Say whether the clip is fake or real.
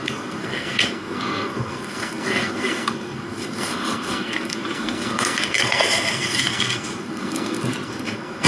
fake